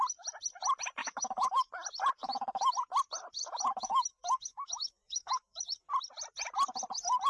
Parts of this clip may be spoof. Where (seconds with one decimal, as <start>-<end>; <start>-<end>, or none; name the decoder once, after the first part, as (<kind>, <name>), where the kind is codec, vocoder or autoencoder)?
1.0-1.7 (autoencoder, DAC-VAE); 2.2-2.7; 3.4-5.9